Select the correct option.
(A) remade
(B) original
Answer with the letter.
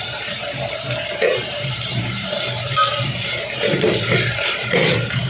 A